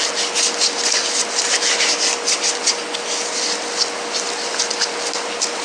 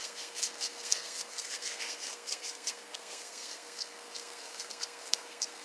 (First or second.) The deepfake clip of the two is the second